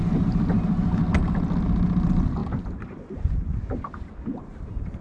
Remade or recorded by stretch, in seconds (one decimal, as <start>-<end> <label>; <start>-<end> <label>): 0.0-1.0 remade; 1.0-1.6 recorded; 1.6-2.4 remade; 2.4-4.4 recorded; 4.4-5.0 remade